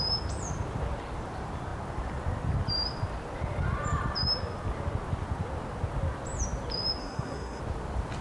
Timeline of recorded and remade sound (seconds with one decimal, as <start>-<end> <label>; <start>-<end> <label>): 0.0-7.0 recorded; 7.0-7.6 remade; 7.6-8.2 recorded